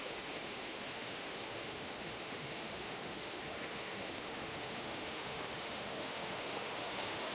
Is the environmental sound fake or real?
fake